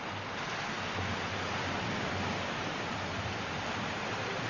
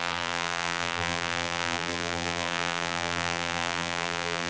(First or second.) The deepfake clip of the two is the second